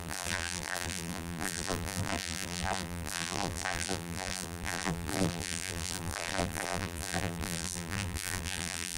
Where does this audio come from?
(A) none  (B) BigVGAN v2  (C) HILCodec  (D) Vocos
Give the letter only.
B